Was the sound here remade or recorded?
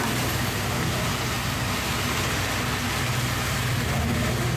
recorded